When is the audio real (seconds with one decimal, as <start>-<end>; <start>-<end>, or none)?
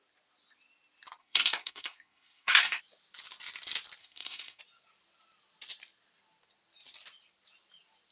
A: 0.0-1.2; 2.8-4.0; 4.6-8.1